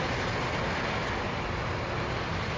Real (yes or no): yes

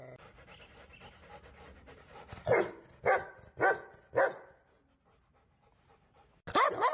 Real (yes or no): yes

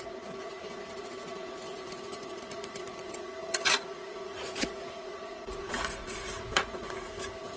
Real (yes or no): no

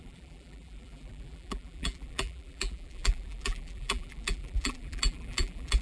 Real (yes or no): no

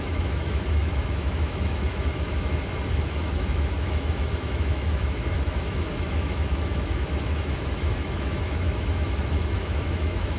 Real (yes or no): no